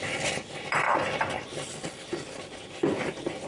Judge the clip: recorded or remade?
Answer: recorded